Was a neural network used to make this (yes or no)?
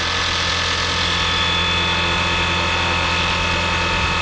no